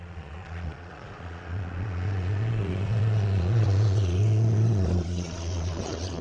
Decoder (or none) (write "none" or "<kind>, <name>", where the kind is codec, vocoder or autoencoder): vocoder, Vocos